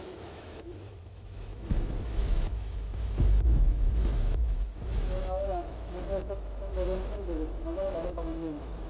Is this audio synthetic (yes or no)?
yes